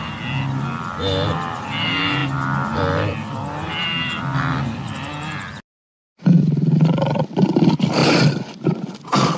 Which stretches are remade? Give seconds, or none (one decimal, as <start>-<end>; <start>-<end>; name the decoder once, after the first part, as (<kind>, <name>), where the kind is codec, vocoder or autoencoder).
none